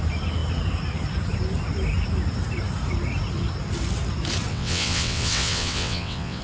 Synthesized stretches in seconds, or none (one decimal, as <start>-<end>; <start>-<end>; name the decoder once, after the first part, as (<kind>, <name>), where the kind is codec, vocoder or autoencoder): 4.5-6.4 (vocoder, WaveNeXt)